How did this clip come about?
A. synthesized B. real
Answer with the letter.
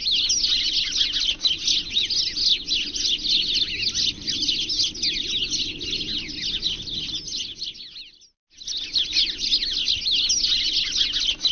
B